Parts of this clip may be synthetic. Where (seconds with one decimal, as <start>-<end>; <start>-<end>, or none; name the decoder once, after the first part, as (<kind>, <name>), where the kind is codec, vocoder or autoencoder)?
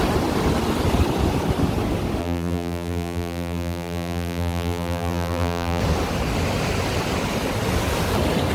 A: 2.2-5.8 (vocoder, BigVGAN v2)